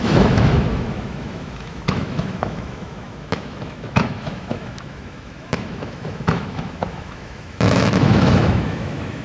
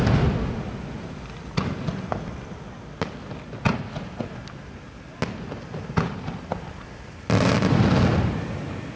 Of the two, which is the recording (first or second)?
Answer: second